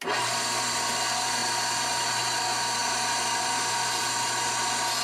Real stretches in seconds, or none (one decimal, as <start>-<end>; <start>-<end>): 0.0-5.0